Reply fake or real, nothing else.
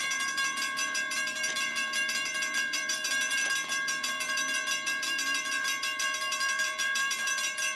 fake